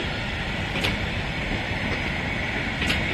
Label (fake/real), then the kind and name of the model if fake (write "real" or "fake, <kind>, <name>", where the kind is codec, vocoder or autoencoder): real